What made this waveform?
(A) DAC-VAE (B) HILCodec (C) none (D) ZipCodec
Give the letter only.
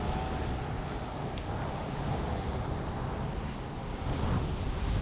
C